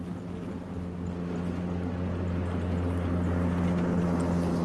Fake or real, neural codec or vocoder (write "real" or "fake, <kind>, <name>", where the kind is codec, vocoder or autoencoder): real